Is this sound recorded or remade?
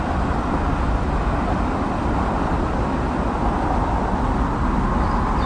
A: remade